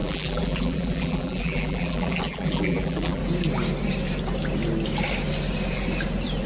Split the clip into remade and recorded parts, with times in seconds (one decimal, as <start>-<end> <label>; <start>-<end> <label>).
0.0-3.2 remade; 3.2-6.5 recorded